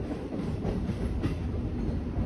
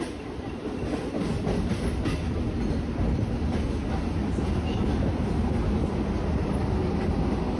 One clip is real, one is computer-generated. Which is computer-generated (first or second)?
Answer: first